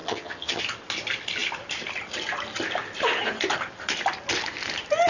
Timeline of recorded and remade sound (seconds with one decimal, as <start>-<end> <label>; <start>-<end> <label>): 0.0-0.6 remade; 0.6-5.1 recorded